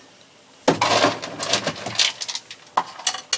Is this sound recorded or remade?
recorded